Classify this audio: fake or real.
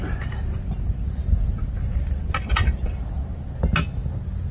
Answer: real